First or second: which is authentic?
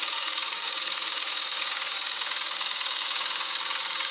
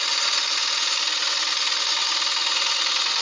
second